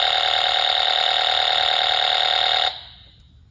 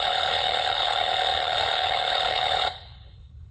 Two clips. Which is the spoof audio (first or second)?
second